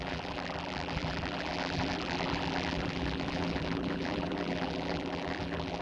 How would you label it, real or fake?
fake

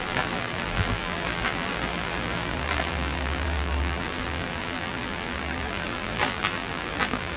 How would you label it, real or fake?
fake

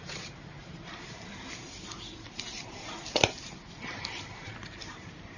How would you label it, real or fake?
fake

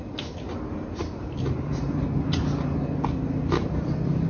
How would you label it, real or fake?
fake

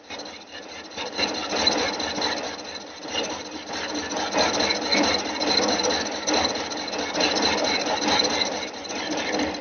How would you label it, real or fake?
real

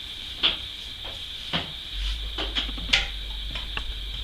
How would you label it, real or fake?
real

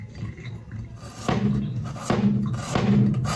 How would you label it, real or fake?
real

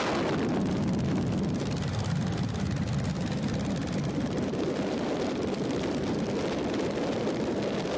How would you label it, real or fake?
real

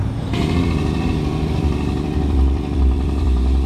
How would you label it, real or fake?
fake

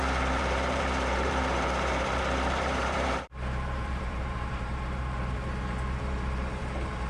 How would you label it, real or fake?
fake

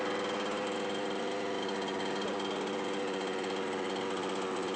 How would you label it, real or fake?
real